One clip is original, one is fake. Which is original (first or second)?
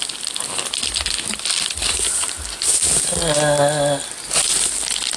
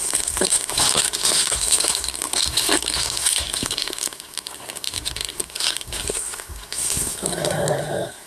first